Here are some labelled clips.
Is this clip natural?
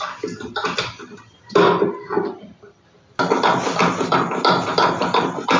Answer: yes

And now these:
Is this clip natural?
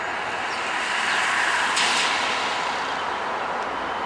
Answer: yes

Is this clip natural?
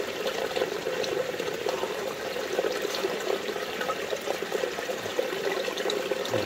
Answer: yes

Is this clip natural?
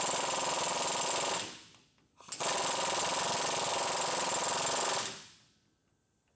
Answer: yes